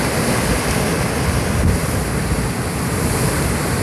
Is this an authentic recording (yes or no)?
yes